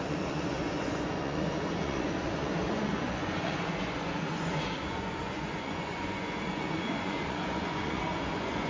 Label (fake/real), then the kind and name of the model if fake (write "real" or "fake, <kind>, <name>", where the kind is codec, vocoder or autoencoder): fake, vocoder, Vocos